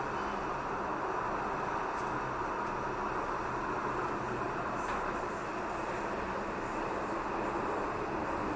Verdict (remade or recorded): recorded